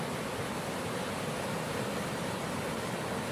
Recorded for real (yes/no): yes